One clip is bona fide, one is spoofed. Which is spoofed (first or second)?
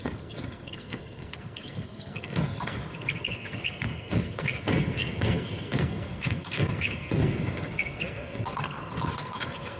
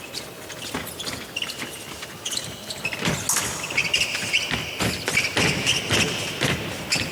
first